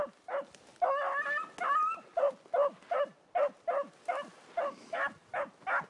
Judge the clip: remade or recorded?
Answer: recorded